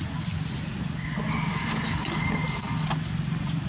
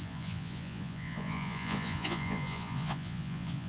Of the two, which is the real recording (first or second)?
first